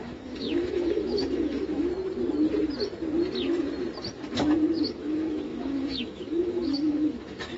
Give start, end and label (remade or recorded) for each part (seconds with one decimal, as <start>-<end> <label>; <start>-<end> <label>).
0.0-1.9 remade; 1.9-4.2 recorded; 4.2-7.6 remade